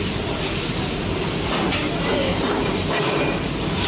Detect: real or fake fake